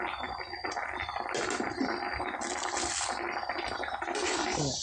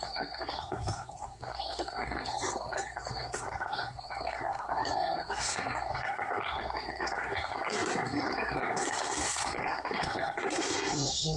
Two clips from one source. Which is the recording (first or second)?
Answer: first